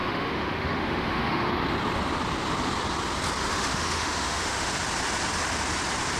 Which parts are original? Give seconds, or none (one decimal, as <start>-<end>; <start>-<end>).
1.5-3.5; 4.7-6.2